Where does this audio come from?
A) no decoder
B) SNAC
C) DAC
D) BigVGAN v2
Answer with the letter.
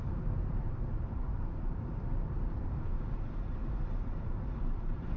D